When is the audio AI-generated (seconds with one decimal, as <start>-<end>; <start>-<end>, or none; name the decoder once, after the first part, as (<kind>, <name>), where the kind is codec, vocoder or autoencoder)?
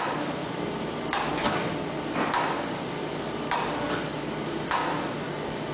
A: none